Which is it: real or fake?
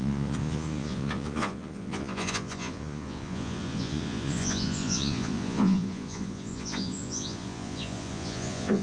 fake